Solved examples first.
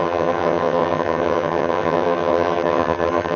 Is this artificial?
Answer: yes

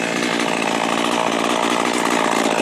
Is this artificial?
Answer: no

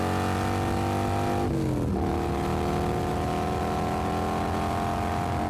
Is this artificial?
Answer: no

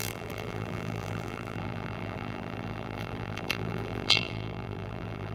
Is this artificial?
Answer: yes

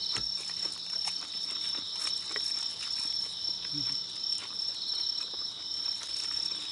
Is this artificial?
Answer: no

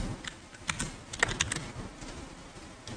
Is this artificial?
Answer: no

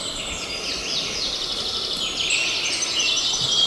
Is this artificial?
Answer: no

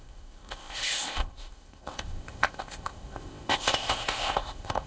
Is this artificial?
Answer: yes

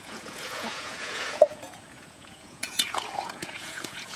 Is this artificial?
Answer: yes